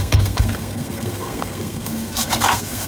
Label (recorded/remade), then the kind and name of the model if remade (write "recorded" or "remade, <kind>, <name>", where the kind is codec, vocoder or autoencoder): remade, codec, SNAC